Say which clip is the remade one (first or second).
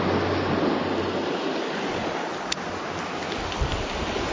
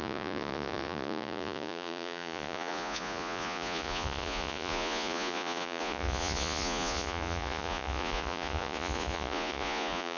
second